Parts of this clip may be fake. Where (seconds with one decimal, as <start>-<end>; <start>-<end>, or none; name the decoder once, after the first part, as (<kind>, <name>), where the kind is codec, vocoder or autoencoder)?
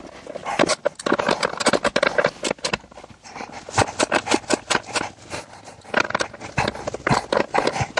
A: none